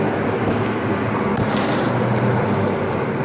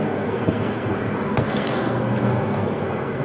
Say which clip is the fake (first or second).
second